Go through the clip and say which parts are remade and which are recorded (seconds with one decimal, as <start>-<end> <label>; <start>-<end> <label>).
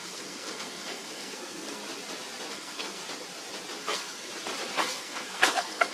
0.0-1.8 remade; 1.8-2.5 recorded; 2.5-3.0 remade; 3.0-3.8 recorded; 3.8-4.3 remade; 4.3-4.8 recorded; 4.8-5.9 remade